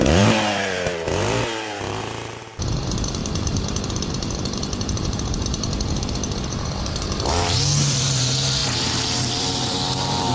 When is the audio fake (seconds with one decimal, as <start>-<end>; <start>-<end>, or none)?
0.0-10.3